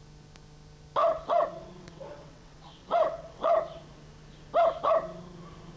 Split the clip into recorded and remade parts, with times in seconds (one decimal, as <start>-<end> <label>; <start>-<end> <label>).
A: 0.0-1.0 recorded; 1.0-3.8 remade; 3.8-5.8 recorded